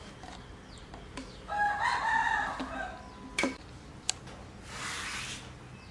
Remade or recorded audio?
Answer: recorded